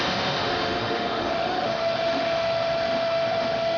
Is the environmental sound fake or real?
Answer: fake